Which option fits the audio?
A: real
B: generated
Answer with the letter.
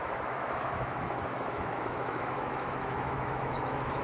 B